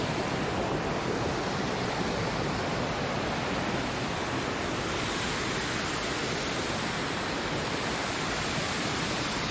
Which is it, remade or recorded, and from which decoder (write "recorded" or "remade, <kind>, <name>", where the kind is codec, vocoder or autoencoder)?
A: recorded